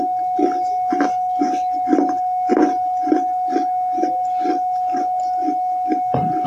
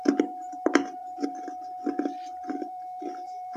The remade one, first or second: second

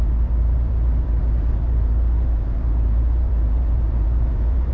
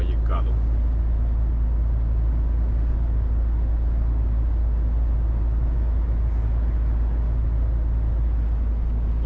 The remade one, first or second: first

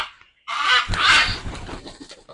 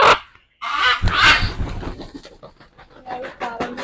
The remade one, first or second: first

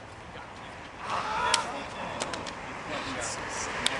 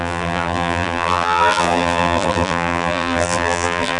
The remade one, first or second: second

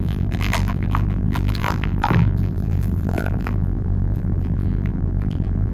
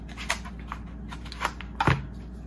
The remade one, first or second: first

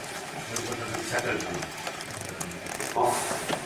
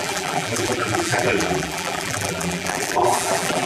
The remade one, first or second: second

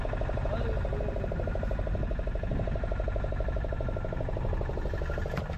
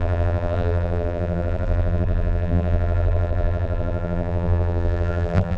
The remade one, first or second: second